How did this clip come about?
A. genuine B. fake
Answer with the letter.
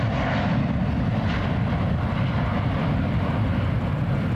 A